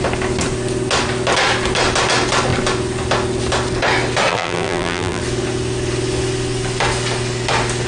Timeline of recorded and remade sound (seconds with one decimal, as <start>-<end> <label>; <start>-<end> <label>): 0.0-4.3 recorded; 4.3-5.2 remade; 5.2-7.9 recorded